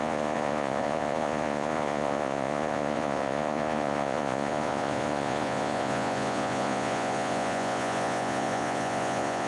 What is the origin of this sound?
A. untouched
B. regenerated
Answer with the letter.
B